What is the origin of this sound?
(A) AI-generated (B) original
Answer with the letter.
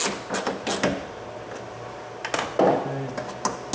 B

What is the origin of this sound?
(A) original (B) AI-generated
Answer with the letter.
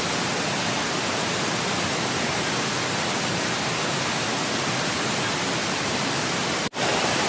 A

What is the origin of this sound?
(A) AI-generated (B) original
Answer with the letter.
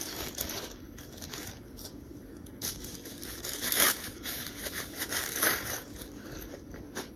A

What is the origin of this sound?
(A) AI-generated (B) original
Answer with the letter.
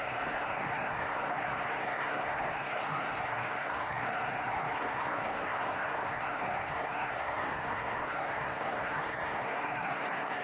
A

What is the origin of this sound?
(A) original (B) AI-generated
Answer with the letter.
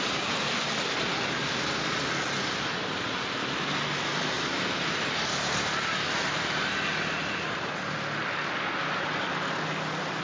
A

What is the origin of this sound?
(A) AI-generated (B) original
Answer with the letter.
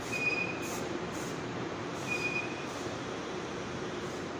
A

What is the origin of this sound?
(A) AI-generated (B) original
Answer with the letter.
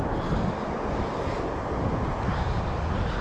B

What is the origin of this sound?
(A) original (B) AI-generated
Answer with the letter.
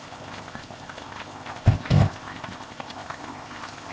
B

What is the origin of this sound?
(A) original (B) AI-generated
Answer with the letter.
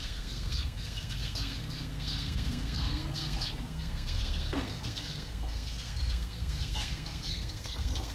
B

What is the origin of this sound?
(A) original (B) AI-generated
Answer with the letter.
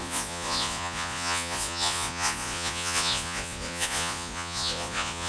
B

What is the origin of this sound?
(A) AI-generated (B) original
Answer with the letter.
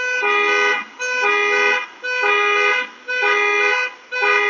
B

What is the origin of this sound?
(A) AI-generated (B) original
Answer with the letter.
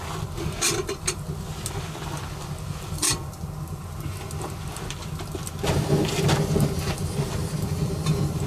B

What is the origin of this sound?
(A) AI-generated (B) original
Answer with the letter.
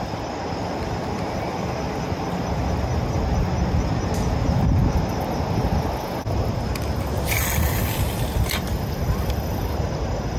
B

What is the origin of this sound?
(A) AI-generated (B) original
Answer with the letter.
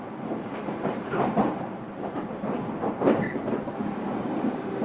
A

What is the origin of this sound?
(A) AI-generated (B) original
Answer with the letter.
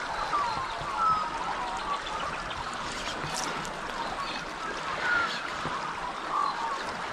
B